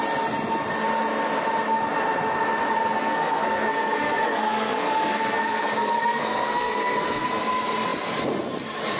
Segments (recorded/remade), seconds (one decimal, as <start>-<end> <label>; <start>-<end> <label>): 0.0-2.9 recorded; 2.9-7.3 remade; 7.3-9.0 recorded